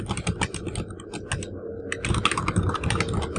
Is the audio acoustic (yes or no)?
yes